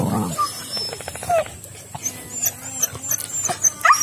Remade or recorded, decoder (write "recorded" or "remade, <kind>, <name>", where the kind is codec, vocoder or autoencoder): recorded